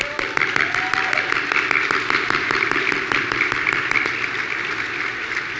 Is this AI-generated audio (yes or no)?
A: no